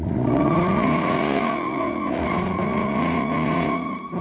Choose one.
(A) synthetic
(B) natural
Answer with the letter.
A